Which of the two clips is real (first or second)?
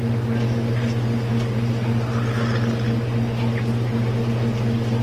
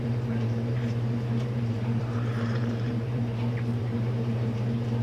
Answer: first